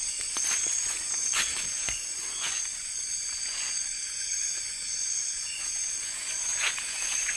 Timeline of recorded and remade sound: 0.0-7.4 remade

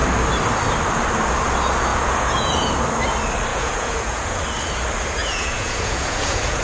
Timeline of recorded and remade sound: 0.0-1.9 recorded; 1.9-2.7 remade; 2.7-3.5 recorded; 3.5-4.4 remade; 4.4-5.2 recorded; 5.2-6.6 remade

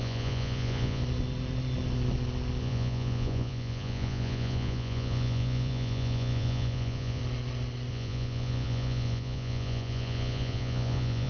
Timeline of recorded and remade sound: 0.0-1.0 remade; 1.0-2.6 recorded; 2.6-7.2 remade; 7.2-7.9 recorded; 7.9-11.3 remade

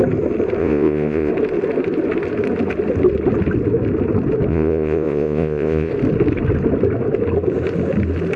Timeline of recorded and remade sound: 0.0-0.6 recorded; 0.6-1.3 remade; 1.3-4.5 recorded; 4.5-5.9 remade; 5.9-8.4 recorded

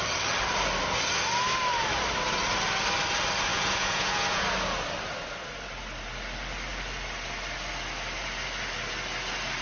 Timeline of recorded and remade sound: 0.0-3.5 recorded; 3.5-4.4 remade; 4.4-9.6 recorded

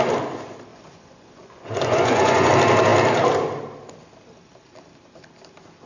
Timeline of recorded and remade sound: 0.0-0.7 recorded; 0.7-2.5 remade; 2.5-5.9 recorded

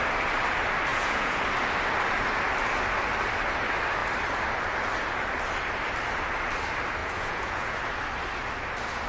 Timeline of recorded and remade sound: 0.0-0.9 recorded; 0.9-1.4 remade; 1.4-7.0 recorded; 7.0-7.8 remade; 7.8-9.1 recorded

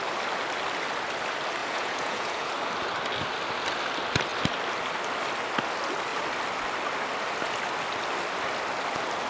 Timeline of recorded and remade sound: 0.0-1.6 recorded; 1.6-2.5 remade; 2.5-9.3 recorded